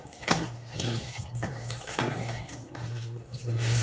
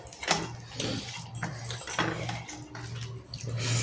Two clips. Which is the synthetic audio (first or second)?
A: first